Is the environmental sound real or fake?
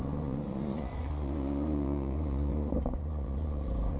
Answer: fake